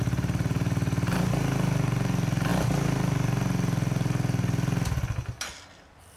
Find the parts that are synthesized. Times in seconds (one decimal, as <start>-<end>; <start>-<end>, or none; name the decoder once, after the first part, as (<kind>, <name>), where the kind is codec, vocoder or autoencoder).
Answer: none